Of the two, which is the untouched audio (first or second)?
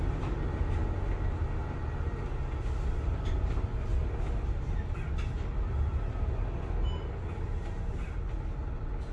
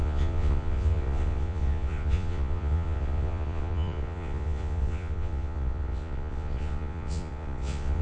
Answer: first